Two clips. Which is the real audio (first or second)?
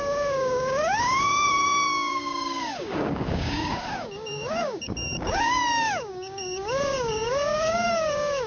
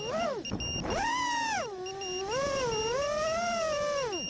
second